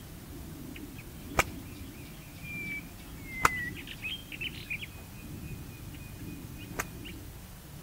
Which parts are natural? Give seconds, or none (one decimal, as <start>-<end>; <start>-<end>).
0.0-7.8